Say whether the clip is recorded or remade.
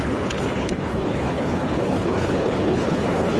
remade